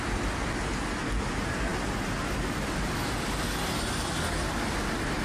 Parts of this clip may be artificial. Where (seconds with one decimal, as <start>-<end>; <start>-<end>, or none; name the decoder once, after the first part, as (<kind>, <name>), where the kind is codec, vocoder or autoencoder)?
none